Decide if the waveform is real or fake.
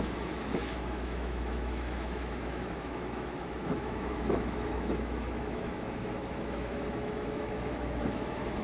fake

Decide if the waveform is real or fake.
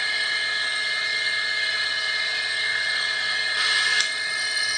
real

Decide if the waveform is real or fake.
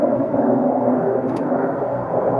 fake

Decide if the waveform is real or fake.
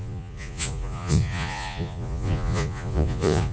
fake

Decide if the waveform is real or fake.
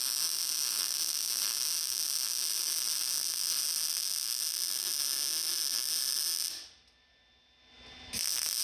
real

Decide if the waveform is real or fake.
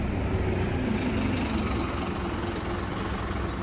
real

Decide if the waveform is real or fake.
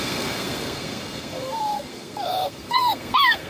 fake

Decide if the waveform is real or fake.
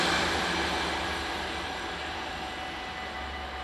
real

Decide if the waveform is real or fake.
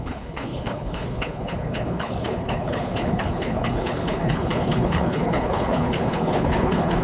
fake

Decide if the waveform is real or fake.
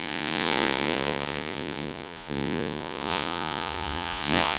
fake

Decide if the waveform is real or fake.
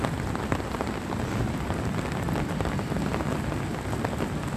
real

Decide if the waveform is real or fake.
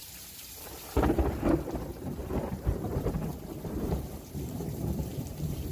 fake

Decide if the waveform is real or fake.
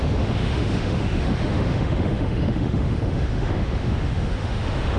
fake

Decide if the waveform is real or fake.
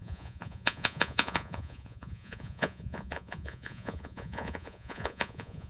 fake